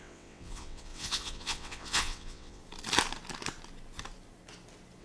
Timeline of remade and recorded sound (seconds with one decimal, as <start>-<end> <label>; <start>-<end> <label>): 0.0-2.6 remade; 2.6-5.0 recorded